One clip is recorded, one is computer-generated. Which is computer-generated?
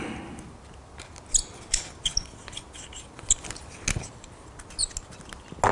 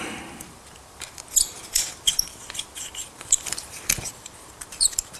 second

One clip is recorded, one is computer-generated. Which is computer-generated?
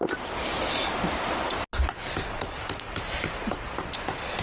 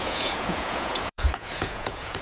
second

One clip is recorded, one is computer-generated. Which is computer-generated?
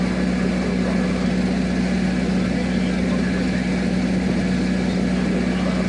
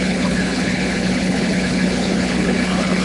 second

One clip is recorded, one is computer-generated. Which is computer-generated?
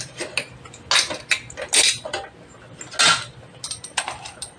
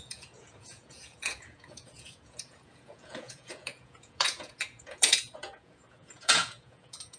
second